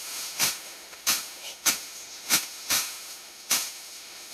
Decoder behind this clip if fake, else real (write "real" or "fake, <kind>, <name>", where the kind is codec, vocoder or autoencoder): fake, autoencoder, DAC-VAE